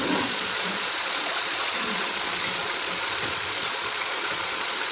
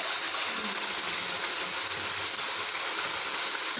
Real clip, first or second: second